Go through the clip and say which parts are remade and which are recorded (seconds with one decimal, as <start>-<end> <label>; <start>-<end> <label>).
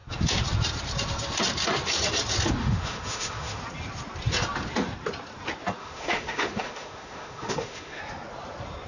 0.0-2.6 recorded; 2.6-3.6 remade; 3.6-5.8 recorded; 5.8-8.0 remade; 8.0-8.9 recorded